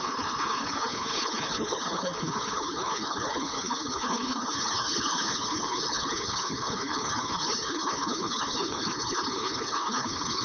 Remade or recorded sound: remade